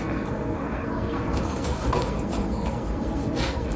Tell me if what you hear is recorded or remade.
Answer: remade